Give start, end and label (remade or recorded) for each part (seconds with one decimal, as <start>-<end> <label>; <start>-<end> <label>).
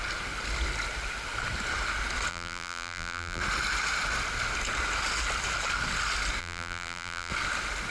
0.0-2.3 recorded; 2.3-3.4 remade; 3.4-6.4 recorded; 6.4-7.3 remade; 7.3-7.9 recorded